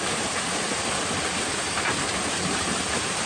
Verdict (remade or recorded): recorded